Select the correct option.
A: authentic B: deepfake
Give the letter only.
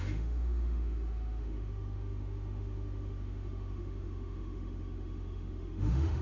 B